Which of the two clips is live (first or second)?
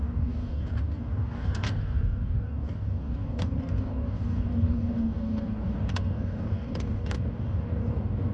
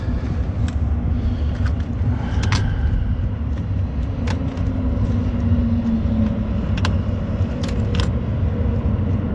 second